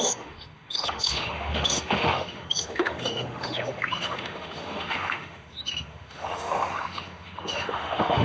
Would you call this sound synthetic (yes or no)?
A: yes